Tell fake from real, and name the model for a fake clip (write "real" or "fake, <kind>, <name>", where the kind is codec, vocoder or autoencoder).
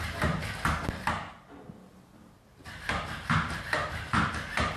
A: real